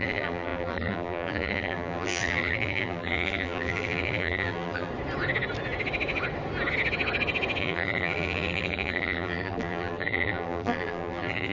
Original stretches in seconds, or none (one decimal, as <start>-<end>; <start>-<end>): 4.9-7.6